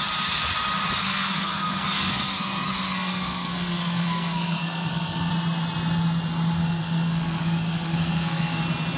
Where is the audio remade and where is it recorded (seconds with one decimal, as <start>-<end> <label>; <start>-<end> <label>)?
0.0-1.0 recorded; 1.0-5.3 remade; 5.3-6.6 recorded; 6.6-8.6 remade; 8.6-9.0 recorded